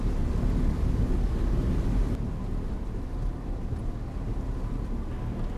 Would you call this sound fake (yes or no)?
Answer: no